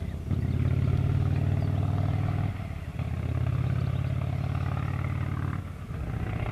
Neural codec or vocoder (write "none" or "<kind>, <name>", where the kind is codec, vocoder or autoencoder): none